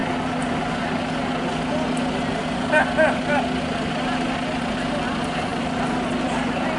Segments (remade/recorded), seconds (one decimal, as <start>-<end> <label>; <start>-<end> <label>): 0.0-6.8 recorded